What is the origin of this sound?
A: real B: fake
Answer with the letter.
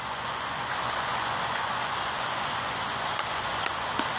B